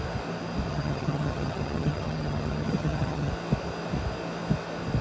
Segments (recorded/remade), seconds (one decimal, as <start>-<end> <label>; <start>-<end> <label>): 0.0-0.7 recorded; 0.7-3.3 remade; 3.3-5.0 recorded